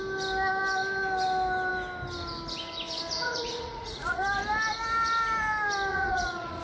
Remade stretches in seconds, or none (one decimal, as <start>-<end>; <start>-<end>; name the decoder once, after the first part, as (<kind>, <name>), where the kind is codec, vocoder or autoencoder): 3.1-4.2 (vocoder, Vocos); 5.9-6.6

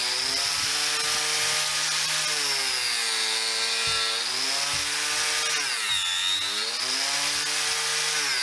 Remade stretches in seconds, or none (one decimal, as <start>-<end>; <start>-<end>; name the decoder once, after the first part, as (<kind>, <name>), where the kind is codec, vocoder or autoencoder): none

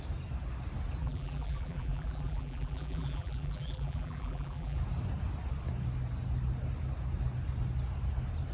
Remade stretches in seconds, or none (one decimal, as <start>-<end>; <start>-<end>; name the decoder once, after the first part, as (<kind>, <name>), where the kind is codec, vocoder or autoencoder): 1.0-4.8 (vocoder, BigVGAN v2)

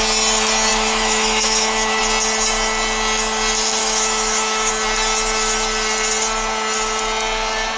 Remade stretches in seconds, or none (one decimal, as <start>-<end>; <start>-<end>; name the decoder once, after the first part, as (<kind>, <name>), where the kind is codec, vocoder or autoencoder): 0.7-2.0 (autoencoder, DAC-VAE); 3.8-4.7